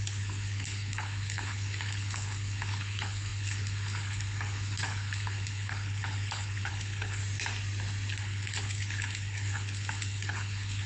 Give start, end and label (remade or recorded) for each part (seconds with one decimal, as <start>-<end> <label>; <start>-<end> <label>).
0.0-7.2 remade; 7.2-8.2 recorded; 8.2-10.9 remade